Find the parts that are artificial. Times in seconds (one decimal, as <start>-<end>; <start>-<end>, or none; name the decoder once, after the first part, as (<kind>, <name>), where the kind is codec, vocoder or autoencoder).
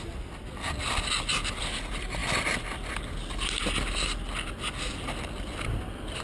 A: none